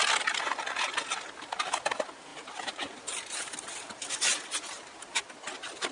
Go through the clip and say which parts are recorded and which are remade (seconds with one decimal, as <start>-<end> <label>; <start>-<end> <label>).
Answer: 0.0-2.3 recorded; 2.3-5.3 remade; 5.3-5.9 recorded